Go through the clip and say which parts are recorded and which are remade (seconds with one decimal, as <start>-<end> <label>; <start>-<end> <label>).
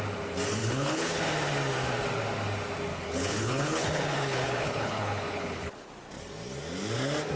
0.0-0.6 recorded; 0.6-1.2 remade; 1.2-2.9 recorded; 2.9-5.9 remade; 5.9-7.4 recorded